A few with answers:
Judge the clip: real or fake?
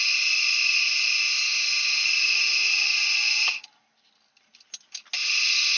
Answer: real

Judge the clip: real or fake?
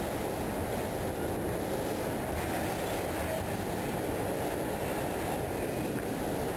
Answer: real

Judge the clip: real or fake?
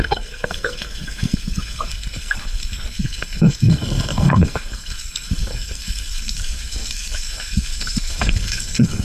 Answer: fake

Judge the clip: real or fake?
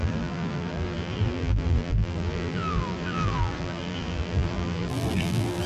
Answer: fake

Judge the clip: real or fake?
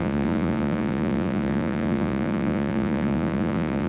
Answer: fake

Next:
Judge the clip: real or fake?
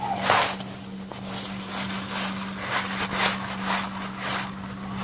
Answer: real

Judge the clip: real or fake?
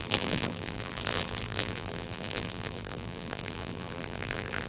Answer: fake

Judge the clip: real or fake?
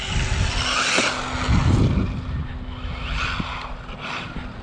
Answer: real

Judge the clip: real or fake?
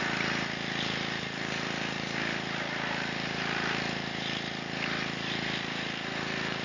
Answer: fake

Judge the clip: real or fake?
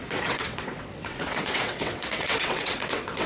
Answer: fake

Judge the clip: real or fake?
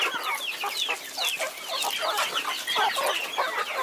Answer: real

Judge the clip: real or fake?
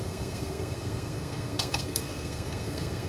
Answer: fake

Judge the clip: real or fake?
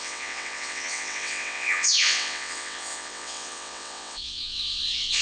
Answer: fake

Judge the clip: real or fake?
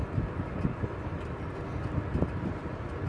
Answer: real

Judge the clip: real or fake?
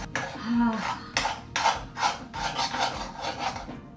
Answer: real